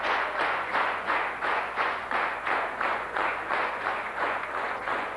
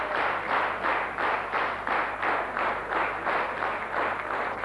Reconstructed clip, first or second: first